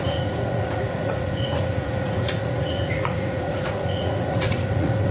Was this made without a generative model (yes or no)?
no